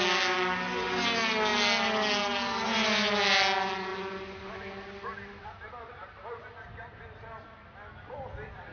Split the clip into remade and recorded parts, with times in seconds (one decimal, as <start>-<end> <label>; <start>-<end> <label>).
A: 0.0-8.7 recorded